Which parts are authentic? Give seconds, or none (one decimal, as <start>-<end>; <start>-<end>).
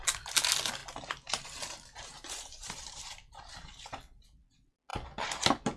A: 0.0-0.8; 4.2-5.8